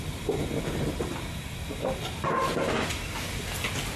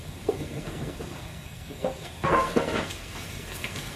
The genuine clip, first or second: first